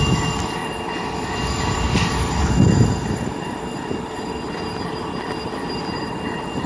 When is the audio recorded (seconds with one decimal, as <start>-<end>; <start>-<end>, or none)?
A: 0.0-6.7